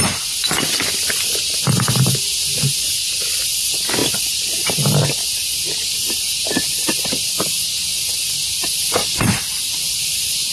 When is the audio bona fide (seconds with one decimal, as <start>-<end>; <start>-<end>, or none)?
0.0-8.9; 9.5-10.5